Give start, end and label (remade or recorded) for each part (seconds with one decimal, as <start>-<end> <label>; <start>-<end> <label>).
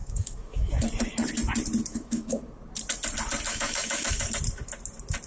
0.0-0.7 remade; 0.7-1.9 recorded; 1.9-2.4 remade; 2.4-3.5 recorded; 3.5-4.3 remade; 4.3-5.3 recorded